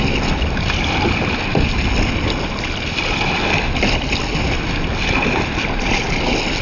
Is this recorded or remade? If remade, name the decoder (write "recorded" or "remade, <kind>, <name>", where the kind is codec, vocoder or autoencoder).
recorded